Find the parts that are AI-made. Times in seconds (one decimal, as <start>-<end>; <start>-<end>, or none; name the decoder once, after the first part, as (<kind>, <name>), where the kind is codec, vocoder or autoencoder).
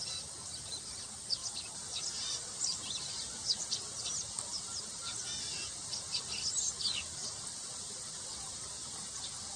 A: none